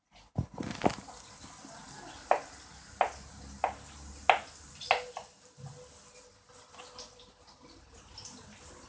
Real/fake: real